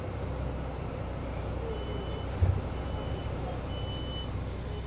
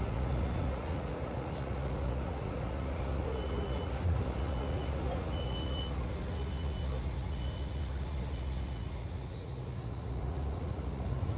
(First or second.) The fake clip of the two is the second